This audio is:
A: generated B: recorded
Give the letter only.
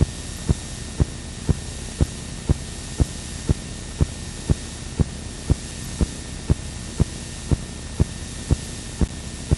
B